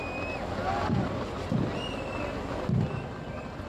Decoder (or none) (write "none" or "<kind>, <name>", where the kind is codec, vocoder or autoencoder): none